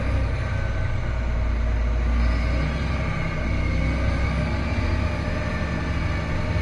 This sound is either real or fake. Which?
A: real